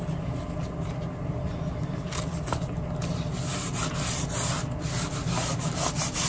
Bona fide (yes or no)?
yes